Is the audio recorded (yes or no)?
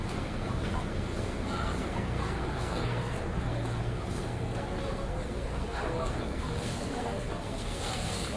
no